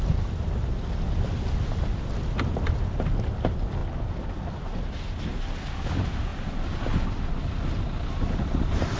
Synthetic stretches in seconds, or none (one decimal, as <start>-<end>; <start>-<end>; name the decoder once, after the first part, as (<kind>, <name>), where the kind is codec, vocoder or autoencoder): none